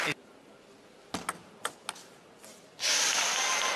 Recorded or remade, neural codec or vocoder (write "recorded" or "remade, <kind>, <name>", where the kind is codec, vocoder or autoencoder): recorded